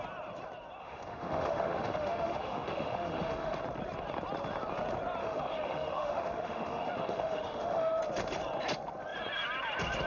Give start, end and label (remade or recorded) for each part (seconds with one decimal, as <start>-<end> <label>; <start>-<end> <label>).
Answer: 0.0-0.8 recorded; 0.8-3.6 remade; 3.6-5.2 recorded; 5.2-8.0 remade; 8.0-10.1 recorded